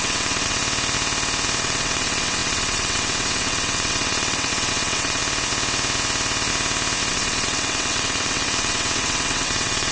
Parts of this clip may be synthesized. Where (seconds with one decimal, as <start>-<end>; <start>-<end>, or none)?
0.0-0.6; 1.6-5.2; 7.1-9.9